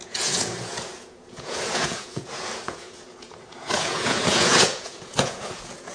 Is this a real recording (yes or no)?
no